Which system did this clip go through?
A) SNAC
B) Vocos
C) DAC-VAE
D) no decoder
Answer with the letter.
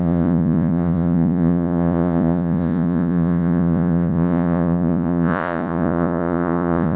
B